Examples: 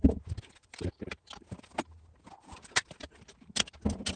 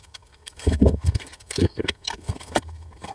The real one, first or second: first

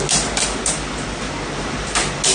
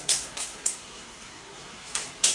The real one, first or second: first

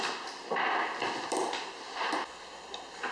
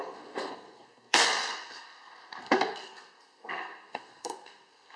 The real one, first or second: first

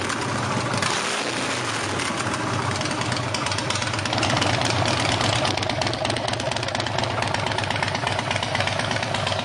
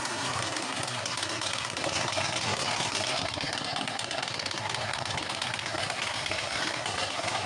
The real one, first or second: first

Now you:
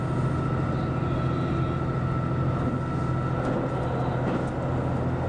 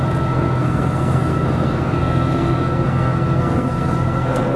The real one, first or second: first